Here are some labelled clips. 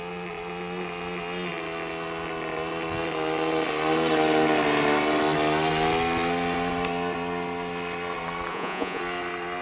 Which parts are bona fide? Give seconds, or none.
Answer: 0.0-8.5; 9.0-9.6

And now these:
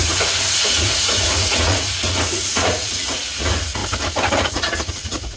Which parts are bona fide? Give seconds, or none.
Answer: 3.8-4.4

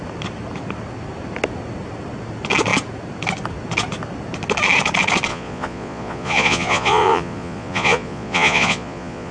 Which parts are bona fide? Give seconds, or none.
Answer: 0.0-5.3

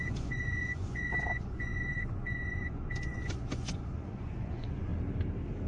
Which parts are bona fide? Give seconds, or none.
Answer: 4.9-5.7

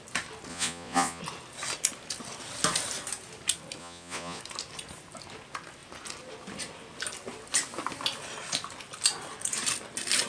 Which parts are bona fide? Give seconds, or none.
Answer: 0.0-0.5; 1.2-3.8; 4.4-10.3

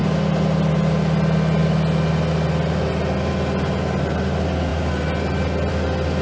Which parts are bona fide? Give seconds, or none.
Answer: 0.0-6.2

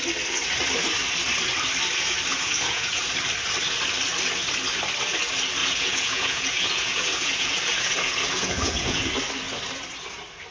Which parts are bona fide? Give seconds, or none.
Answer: 0.0-2.3; 3.0-5.6; 9.1-10.5

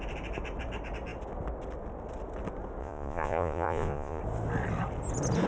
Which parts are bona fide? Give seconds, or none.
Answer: 0.0-2.8; 4.2-5.5